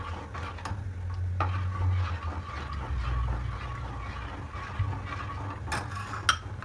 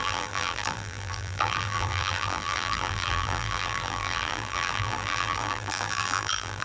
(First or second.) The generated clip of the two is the second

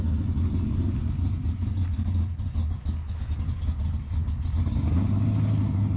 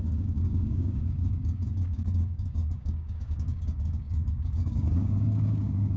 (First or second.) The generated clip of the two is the second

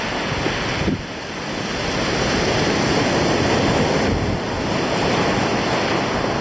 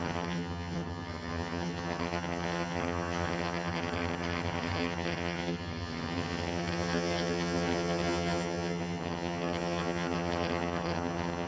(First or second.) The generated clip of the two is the second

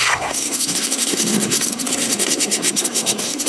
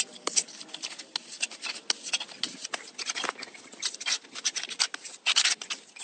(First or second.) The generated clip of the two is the first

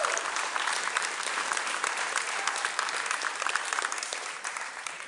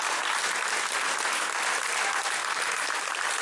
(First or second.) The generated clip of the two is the first